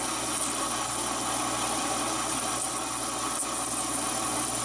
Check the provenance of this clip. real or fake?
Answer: real